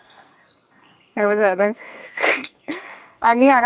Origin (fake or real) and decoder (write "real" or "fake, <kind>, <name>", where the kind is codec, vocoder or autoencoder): fake, codec, SNAC